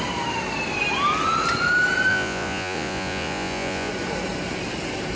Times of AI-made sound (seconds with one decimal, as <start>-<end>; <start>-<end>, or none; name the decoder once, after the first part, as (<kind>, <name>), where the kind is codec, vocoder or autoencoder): 2.1-3.9 (vocoder, Vocos)